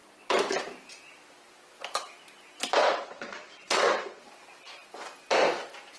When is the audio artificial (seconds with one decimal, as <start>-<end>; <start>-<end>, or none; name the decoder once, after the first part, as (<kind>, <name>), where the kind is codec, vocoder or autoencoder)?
2.8-4.2 (vocoder, WaveNeXt)